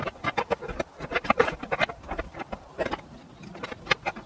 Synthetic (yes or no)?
yes